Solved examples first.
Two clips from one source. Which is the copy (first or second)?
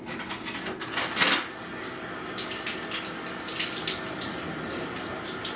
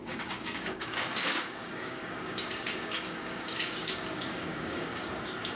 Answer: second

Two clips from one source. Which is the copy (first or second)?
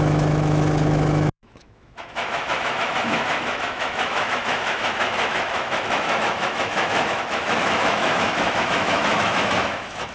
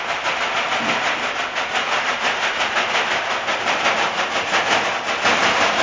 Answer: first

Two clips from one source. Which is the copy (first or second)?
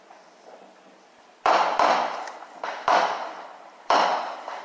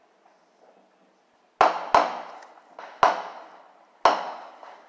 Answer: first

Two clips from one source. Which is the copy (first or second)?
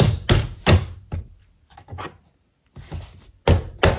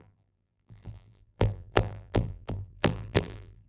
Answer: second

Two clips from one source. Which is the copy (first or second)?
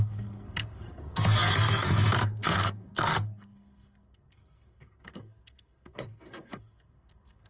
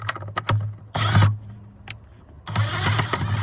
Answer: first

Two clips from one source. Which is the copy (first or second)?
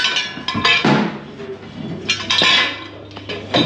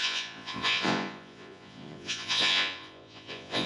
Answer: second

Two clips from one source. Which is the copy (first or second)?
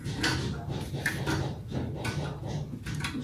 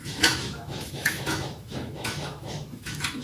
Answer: second